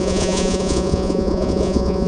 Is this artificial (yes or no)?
yes